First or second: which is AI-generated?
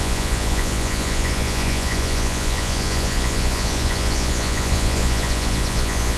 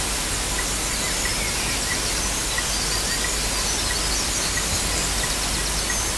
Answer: first